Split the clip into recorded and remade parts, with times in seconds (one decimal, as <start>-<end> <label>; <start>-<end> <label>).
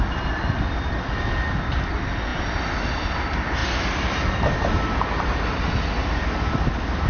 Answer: 0.0-3.6 recorded; 3.6-4.8 remade; 4.8-7.1 recorded